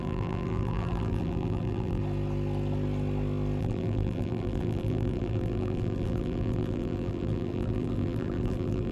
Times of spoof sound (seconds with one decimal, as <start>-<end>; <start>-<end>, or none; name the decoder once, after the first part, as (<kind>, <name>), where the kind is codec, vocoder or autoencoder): 0.0-2.0 (vocoder, BigVGAN v2); 3.6-8.9